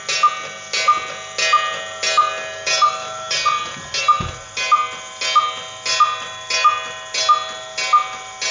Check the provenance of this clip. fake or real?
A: real